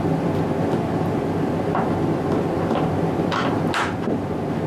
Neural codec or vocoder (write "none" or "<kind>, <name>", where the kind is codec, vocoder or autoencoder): none